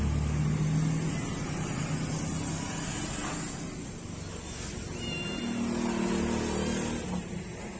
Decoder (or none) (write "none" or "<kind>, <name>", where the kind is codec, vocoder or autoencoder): none